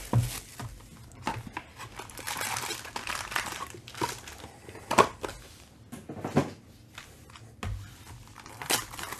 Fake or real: real